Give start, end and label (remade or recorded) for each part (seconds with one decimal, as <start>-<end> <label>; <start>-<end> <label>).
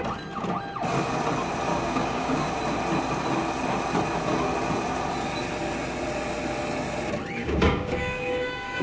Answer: 0.0-1.7 recorded; 1.7-2.5 remade; 2.5-7.4 recorded; 7.4-8.8 remade